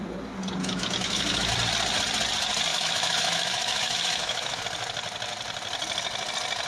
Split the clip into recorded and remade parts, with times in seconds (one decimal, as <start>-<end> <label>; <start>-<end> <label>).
0.0-0.6 recorded; 0.6-1.5 remade; 1.5-2.7 recorded; 2.7-4.6 remade; 4.6-6.7 recorded